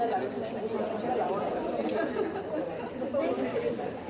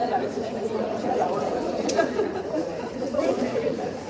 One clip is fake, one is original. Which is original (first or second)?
first